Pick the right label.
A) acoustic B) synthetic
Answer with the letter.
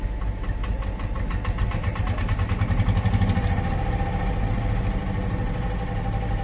A